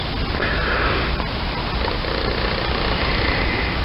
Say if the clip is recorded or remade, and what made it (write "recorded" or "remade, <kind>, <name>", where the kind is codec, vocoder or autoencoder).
recorded